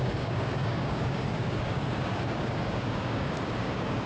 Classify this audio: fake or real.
fake